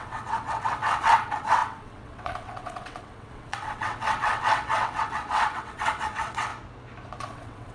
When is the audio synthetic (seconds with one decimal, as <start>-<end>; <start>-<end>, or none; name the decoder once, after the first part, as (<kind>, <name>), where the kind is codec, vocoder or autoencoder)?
0.0-6.5 (vocoder, WaveNeXt); 7.2-7.7